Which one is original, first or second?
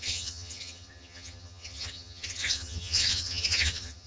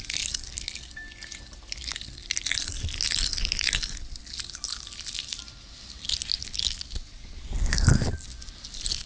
second